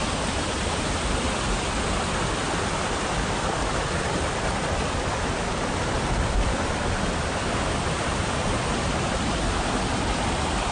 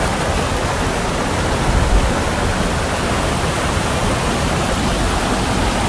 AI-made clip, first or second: first